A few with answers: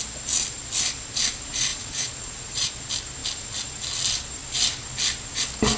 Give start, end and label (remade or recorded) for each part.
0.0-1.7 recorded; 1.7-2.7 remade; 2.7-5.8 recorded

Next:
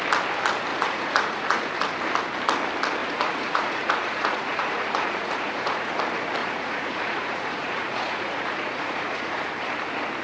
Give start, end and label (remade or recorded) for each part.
0.0-0.7 recorded; 0.7-1.7 remade; 1.7-3.0 recorded; 3.0-5.9 remade; 5.9-6.4 recorded; 6.4-9.5 remade; 9.5-10.2 recorded

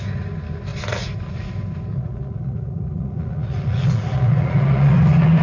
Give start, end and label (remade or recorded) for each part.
0.0-1.9 recorded; 1.9-5.4 remade

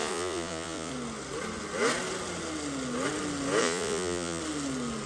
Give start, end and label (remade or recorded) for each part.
0.0-0.9 remade; 0.9-3.6 recorded; 3.6-4.4 remade; 4.4-5.1 recorded

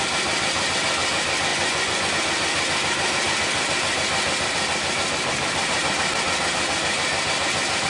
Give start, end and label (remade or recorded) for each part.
0.0-1.5 recorded; 1.5-2.1 remade; 2.1-7.9 recorded

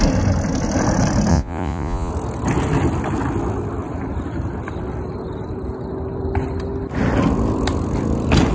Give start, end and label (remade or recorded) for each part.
0.0-1.3 recorded; 1.3-2.1 remade; 2.1-8.5 recorded